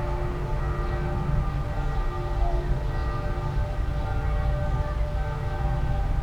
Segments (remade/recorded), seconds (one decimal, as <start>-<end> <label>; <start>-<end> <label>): 0.0-6.2 recorded